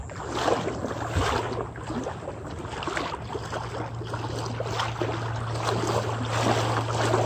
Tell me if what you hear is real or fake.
real